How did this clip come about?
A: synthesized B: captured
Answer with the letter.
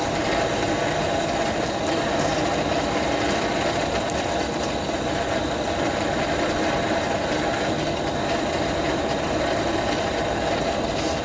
B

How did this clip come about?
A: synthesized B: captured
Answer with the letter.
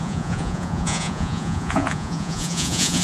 A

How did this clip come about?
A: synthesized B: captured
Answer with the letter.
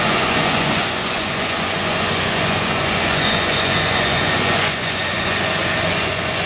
A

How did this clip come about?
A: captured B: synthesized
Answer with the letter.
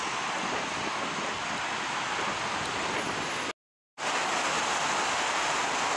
A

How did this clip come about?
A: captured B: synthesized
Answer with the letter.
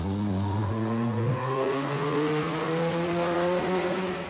B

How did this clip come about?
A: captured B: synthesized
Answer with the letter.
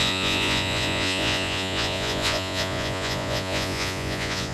B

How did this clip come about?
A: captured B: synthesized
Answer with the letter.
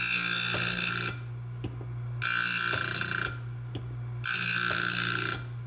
A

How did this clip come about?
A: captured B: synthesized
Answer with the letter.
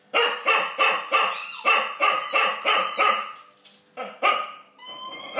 A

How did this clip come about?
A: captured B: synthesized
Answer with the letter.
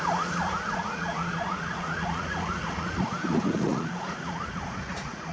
B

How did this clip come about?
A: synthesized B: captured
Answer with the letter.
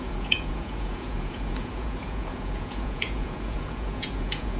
A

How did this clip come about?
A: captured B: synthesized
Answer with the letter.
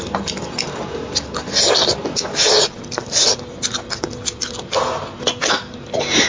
A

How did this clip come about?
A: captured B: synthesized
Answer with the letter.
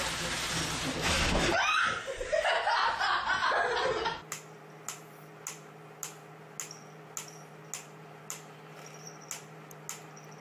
A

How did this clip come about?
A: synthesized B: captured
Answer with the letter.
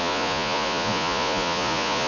A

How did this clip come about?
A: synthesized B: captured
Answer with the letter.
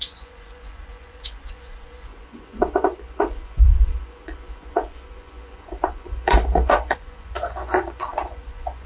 A